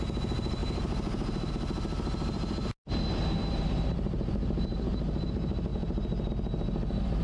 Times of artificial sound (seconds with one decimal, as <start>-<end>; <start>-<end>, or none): 0.6-1.5; 3.4-5.3; 5.7-6.3